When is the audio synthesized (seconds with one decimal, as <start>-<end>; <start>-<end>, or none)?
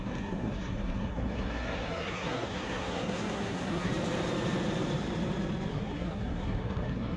0.0-3.9; 5.7-7.2